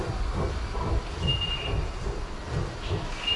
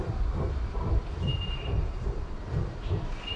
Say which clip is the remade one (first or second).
second